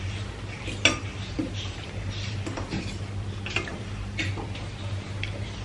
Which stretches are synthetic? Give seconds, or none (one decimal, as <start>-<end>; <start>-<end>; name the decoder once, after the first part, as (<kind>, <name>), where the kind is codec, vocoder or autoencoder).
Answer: 1.1-2.8 (vocoder, BigVGAN v2); 3.7-4.3